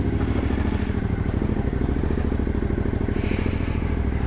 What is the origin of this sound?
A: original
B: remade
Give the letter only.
A